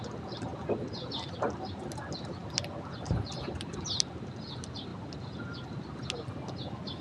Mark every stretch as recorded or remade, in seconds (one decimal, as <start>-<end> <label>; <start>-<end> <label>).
0.0-7.0 recorded